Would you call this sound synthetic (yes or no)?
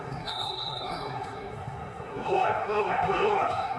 yes